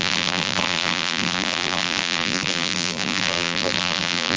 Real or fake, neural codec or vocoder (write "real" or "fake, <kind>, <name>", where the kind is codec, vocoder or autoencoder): fake, vocoder, BigVGAN v2